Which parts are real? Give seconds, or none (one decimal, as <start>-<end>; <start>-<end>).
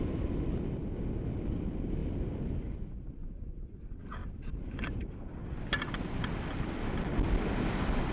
0.0-3.2; 3.8-8.1